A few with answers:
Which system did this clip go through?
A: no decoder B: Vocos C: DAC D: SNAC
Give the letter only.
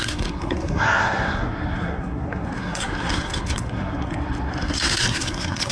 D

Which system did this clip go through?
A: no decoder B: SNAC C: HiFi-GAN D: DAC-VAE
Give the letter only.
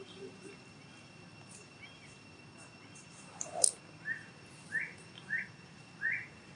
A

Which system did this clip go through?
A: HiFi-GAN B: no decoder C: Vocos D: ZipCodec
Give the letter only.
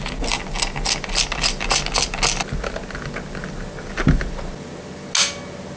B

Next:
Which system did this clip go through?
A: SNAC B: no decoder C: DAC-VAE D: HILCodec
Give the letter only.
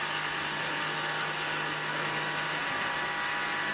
B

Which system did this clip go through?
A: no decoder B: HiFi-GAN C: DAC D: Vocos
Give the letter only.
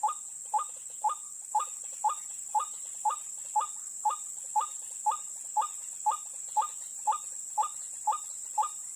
A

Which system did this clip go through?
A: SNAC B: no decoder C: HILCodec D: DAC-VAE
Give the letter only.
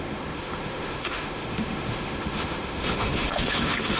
D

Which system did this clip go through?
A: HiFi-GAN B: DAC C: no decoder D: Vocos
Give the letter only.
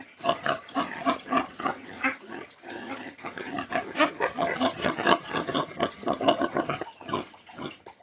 A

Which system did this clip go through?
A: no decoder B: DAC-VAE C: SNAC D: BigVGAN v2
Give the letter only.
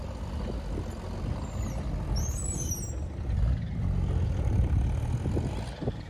A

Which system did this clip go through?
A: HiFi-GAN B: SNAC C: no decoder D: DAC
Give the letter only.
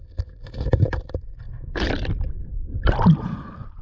C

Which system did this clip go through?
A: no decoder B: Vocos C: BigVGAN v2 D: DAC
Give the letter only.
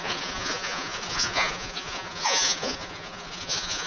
B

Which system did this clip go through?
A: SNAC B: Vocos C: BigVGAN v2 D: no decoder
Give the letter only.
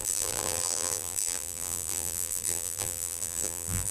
C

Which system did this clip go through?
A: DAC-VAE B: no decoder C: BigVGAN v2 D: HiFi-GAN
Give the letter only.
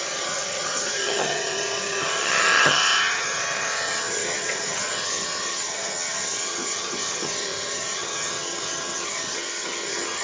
D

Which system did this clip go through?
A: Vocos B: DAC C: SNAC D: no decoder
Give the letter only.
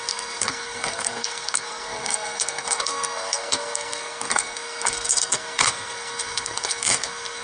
C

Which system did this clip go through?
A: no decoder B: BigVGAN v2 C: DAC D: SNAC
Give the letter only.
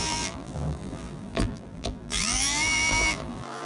B